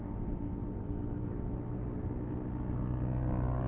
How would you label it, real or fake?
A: real